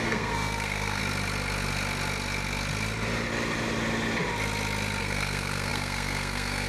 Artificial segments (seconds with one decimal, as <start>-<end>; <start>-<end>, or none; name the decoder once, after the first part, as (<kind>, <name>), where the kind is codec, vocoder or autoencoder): 0.0-1.0 (codec, SNAC); 5.0-6.7